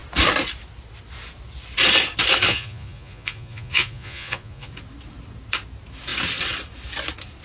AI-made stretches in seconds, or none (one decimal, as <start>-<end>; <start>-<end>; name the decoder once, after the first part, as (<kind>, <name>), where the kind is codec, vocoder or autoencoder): 2.5-4.7 (vocoder, Vocos)